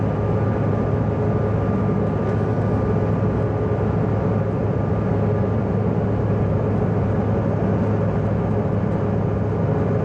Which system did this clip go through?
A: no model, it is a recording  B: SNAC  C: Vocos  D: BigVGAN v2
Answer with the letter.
A